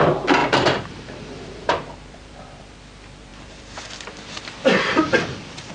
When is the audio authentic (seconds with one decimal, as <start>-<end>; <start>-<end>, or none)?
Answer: 0.0-0.4; 2.6-3.3; 3.8-5.7